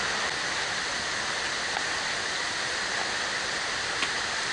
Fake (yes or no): no